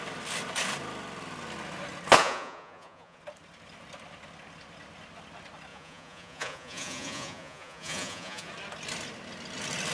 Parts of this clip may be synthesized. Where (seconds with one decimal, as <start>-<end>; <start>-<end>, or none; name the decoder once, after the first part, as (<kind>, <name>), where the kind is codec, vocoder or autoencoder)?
2.2-3.2 (vocoder, Vocos); 5.7-8.5